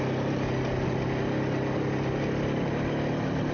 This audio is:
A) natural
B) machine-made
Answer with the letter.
A